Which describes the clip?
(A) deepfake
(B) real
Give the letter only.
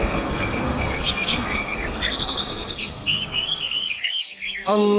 A